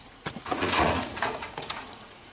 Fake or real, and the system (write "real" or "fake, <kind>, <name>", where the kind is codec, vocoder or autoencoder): fake, vocoder, Vocos